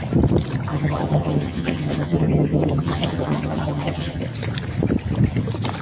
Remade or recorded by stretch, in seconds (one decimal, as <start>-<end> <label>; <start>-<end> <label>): 0.0-0.7 recorded; 0.7-4.2 remade; 4.2-5.8 recorded